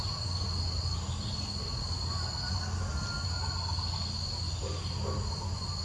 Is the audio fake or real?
real